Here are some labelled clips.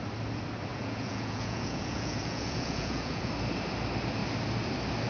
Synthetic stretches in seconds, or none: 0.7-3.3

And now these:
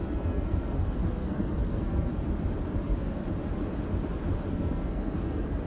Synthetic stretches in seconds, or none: 0.0-2.1; 2.8-3.2; 4.5-5.7